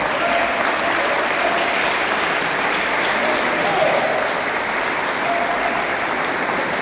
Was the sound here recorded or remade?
recorded